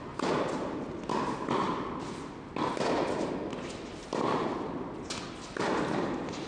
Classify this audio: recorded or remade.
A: recorded